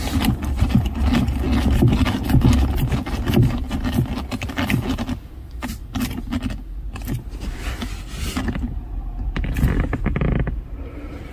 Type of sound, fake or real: real